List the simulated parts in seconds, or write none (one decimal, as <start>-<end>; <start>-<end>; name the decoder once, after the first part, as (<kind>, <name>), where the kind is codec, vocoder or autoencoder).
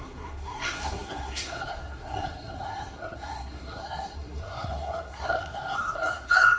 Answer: 0.0-6.6 (codec, SNAC)